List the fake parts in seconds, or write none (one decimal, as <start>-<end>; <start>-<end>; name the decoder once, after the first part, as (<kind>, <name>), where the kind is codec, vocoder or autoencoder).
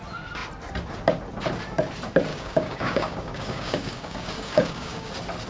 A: 2.3-5.1 (codec, DAC)